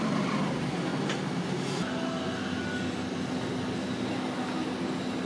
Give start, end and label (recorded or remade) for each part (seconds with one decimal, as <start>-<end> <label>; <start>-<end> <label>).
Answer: 0.0-5.3 recorded